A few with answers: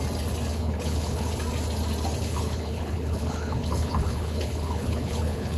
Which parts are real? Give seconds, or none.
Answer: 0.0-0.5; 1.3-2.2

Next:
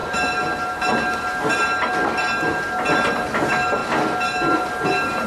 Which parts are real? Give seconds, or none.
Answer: 0.0-3.2; 3.8-4.7

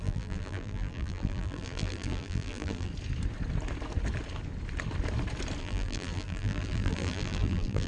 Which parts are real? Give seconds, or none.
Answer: 2.9-5.6

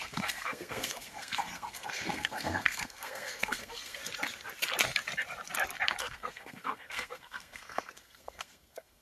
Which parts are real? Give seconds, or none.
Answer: 4.0-6.0

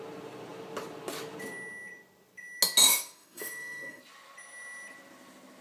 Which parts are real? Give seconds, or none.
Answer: 0.0-2.8; 4.0-5.6

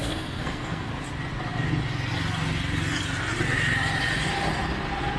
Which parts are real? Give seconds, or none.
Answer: 0.9-5.2